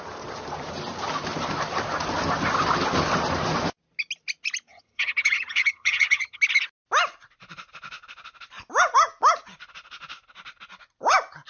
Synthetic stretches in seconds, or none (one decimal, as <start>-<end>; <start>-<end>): 4.7-6.4